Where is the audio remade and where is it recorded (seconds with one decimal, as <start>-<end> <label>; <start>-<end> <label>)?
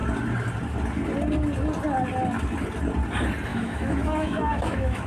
0.0-3.5 recorded; 3.5-5.1 remade